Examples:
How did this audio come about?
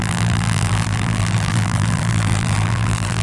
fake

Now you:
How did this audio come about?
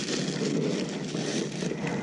real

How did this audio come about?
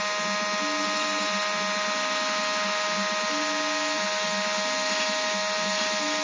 real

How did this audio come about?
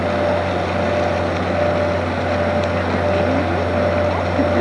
real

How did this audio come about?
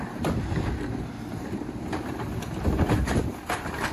real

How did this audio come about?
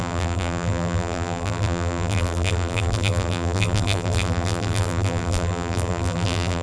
fake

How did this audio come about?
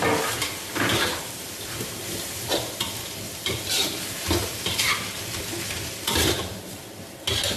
fake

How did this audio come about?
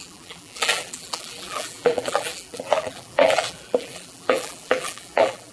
fake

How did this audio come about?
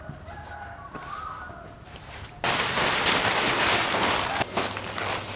real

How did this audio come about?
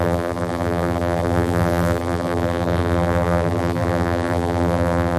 fake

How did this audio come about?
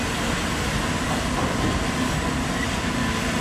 real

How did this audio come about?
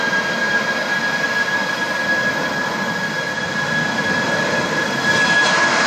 real